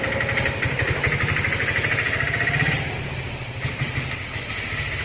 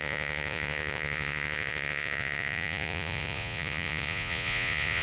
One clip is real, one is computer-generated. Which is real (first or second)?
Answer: first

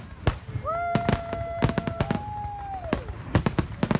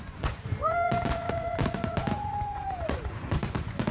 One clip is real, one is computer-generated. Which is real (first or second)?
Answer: first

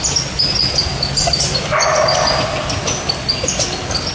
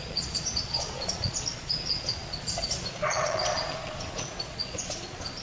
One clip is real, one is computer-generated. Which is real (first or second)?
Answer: first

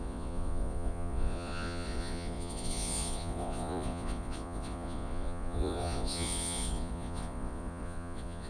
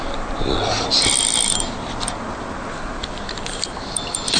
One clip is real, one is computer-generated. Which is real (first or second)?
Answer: second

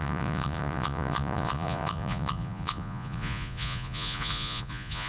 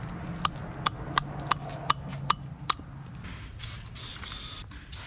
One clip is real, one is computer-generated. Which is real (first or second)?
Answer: second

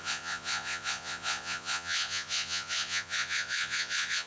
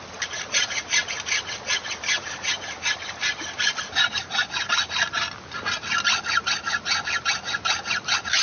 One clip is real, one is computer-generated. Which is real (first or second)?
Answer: second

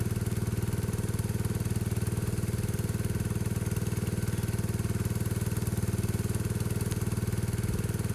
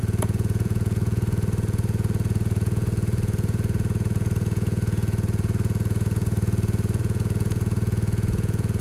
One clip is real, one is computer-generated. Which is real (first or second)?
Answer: first